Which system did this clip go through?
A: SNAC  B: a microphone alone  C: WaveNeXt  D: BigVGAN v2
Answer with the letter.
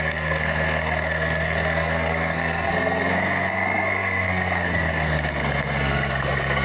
A